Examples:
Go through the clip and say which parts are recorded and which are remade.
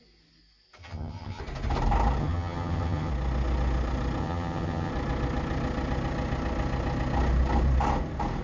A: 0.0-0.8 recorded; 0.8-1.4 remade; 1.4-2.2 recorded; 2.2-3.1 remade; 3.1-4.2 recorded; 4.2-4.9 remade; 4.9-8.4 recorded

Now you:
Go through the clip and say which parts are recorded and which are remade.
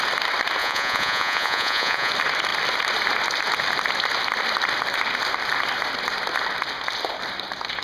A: 0.0-0.6 recorded; 0.6-2.1 remade; 2.1-7.8 recorded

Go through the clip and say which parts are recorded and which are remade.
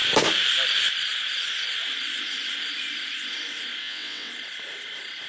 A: 0.0-3.8 recorded; 3.8-4.3 remade; 4.3-5.3 recorded